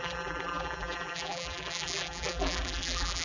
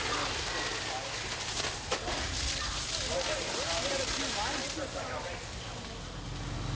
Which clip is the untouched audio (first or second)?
second